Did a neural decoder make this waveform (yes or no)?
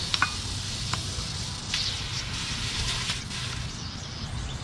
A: no